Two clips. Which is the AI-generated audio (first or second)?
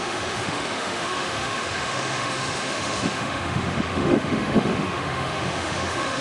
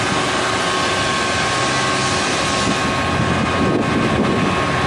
first